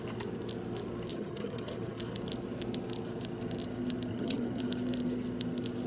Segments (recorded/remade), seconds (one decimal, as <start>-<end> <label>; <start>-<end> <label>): 0.0-1.1 recorded; 1.1-2.0 remade; 2.0-4.1 recorded; 4.1-4.6 remade; 4.6-5.9 recorded